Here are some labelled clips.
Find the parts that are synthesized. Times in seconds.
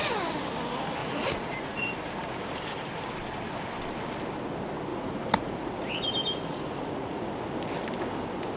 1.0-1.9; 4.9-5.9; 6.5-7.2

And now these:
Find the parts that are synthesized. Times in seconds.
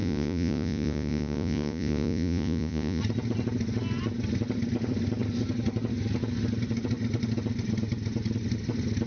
0.0-3.0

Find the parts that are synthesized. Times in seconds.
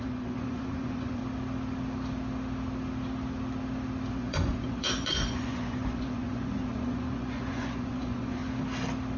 0.0-1.2; 4.1-8.4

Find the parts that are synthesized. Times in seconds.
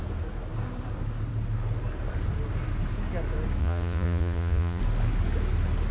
3.6-4.8